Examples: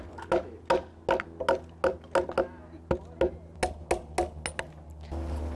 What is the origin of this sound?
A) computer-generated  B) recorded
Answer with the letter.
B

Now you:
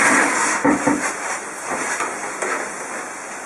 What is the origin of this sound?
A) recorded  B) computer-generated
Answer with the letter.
A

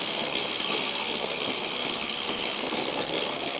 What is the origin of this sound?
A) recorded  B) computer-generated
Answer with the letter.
B